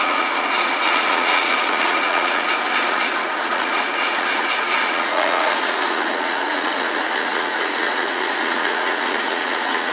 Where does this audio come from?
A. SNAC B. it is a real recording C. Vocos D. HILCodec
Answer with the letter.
C